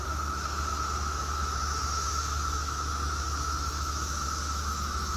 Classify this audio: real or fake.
fake